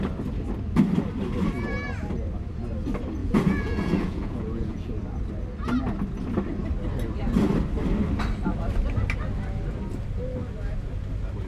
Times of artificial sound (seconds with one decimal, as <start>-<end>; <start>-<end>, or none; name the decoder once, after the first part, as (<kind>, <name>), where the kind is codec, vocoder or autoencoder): 3.2-4.9 (vocoder, Vocos)